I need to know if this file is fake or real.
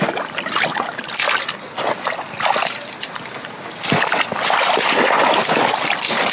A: real